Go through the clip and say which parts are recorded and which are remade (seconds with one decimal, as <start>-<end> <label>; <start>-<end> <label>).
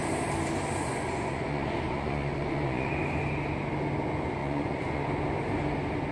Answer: 0.0-0.8 recorded; 0.8-2.9 remade; 2.9-4.4 recorded; 4.4-5.0 remade; 5.0-6.1 recorded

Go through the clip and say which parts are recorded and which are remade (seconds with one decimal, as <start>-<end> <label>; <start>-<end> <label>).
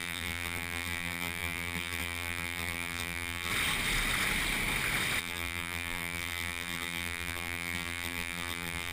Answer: 0.0-3.5 remade; 3.5-5.2 recorded; 5.2-8.9 remade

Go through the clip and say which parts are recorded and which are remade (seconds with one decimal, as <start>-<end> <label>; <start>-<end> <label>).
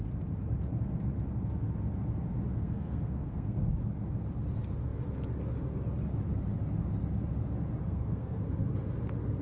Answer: 0.0-2.5 recorded; 2.5-3.7 remade; 3.7-7.8 recorded; 7.8-8.4 remade; 8.4-9.4 recorded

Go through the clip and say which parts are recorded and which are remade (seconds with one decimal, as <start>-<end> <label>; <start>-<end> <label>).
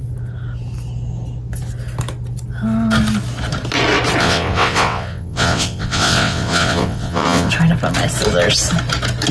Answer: 0.0-4.2 recorded; 4.2-7.5 remade; 7.5-9.3 recorded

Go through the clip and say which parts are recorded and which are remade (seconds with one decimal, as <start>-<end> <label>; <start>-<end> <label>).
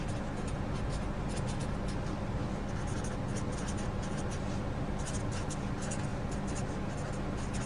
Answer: 0.0-7.7 recorded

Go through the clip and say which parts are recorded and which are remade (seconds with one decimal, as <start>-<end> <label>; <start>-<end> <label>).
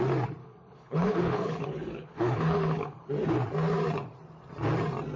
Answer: 0.0-0.4 recorded; 0.4-3.1 remade; 3.1-5.2 recorded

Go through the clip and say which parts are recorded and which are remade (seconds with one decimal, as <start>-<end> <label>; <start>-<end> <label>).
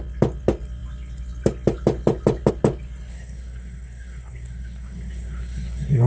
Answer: 0.0-3.1 recorded; 3.1-6.1 remade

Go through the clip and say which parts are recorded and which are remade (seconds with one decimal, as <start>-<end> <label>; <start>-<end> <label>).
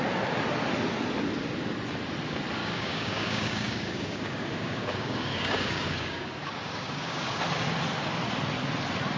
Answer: 0.0-2.6 recorded; 2.6-7.4 remade; 7.4-9.2 recorded